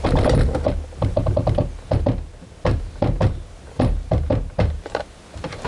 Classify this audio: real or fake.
real